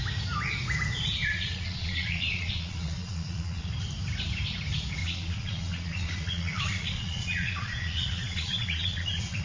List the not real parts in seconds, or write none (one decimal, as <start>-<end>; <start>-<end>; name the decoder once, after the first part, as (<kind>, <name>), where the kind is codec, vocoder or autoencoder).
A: 1.2-3.7 (vocoder, Vocos); 5.0-9.4